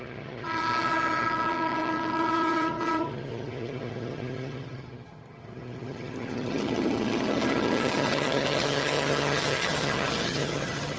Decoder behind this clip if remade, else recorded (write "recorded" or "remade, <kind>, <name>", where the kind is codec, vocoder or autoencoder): remade, vocoder, HiFi-GAN